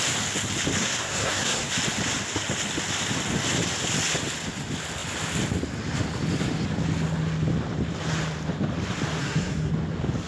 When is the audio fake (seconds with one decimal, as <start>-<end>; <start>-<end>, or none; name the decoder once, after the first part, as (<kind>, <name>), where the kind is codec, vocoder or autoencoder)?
0.8-1.7 (codec, SNAC); 9.2-9.7